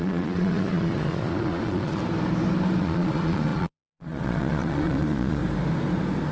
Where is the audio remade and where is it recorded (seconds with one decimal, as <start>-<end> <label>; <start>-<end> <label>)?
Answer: 0.0-2.0 remade; 2.0-2.8 recorded; 2.8-5.4 remade; 5.4-6.3 recorded